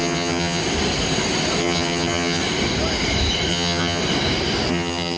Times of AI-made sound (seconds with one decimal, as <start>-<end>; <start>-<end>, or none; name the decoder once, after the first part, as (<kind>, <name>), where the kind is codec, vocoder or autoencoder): 0.0-0.6 (vocoder, HiFi-GAN); 1.6-2.4; 3.5-4.0; 4.7-5.2